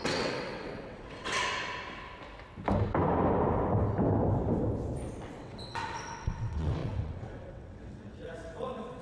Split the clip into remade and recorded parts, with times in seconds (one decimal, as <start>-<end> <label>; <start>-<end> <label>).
0.0-1.4 remade; 1.4-5.4 recorded; 5.4-9.0 remade